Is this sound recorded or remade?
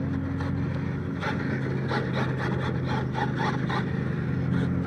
recorded